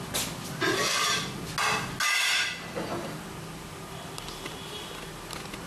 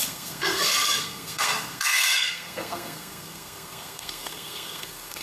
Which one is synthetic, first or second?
second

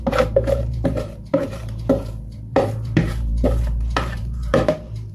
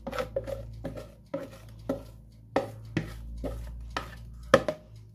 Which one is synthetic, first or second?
first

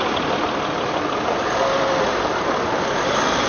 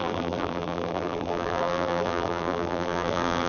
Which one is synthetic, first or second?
second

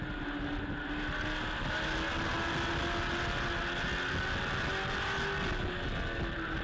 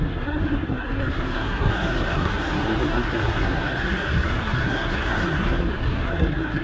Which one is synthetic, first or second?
second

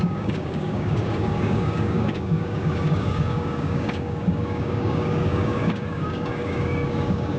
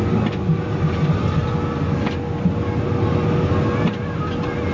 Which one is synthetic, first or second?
first